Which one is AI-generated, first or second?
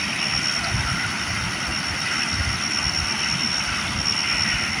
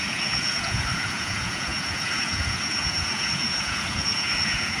second